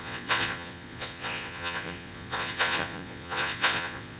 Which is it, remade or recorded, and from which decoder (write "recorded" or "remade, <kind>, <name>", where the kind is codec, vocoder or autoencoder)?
remade, vocoder, Vocos